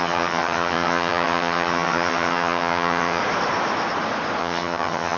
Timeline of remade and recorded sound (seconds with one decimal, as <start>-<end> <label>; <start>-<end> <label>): 0.0-3.2 remade; 3.2-4.4 recorded; 4.4-5.2 remade